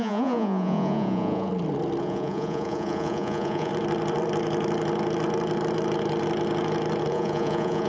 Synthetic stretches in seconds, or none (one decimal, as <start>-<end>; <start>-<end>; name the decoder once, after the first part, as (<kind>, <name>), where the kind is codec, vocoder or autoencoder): 0.0-1.5 (vocoder, Vocos); 2.0-3.7; 7.1-7.9